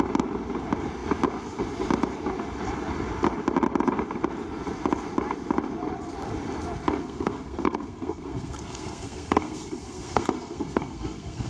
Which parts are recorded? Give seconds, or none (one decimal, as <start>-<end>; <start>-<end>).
0.0-7.0